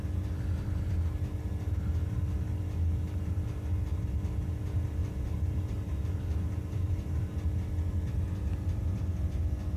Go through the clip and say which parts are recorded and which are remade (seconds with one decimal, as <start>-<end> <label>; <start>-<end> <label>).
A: 0.0-5.0 recorded; 5.0-7.3 remade; 7.3-9.8 recorded